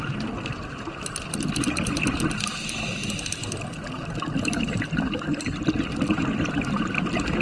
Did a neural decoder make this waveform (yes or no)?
no